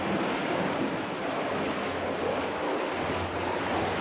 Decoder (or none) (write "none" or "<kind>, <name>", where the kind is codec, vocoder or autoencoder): none